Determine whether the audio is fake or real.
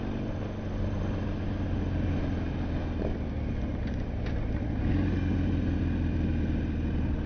real